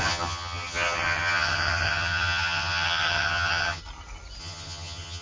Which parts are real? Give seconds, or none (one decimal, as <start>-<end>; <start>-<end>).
3.8-4.4